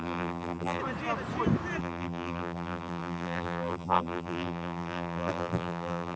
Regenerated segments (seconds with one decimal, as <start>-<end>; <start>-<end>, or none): 0.0-0.8; 1.8-6.2